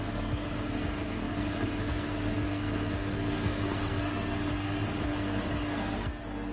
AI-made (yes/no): yes